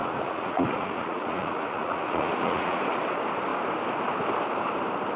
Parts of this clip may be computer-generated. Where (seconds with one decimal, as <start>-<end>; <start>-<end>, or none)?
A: 0.0-2.8